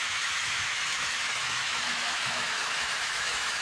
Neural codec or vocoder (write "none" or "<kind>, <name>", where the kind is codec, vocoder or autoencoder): autoencoder, DAC-VAE